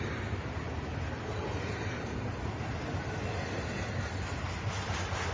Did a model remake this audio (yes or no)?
no